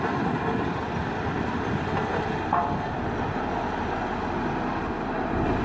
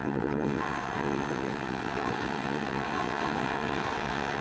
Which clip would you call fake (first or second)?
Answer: second